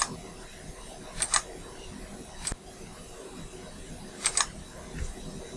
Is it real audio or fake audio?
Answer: real